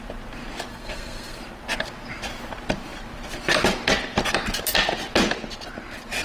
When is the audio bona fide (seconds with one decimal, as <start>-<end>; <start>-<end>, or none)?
0.0-0.7; 1.4-6.2